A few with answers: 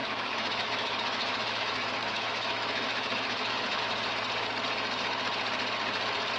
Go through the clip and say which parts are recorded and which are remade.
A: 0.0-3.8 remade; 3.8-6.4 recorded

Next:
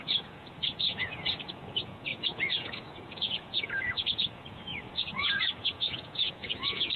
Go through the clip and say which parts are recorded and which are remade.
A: 0.0-7.0 remade

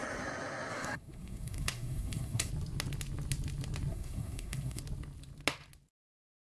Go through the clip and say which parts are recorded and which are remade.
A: 0.0-0.7 recorded; 0.7-2.5 remade; 2.5-3.9 recorded; 3.9-4.8 remade; 4.8-6.4 recorded

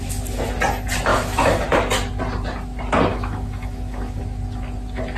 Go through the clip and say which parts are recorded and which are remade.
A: 0.0-1.1 recorded; 1.1-1.7 remade; 1.7-3.1 recorded; 3.1-4.2 remade; 4.2-5.2 recorded

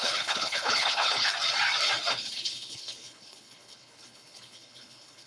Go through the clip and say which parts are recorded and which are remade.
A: 0.0-1.3 remade; 1.3-2.1 recorded; 2.1-5.3 remade